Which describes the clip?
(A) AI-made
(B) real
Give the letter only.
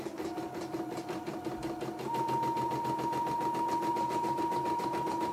B